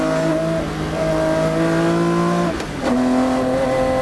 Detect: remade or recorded recorded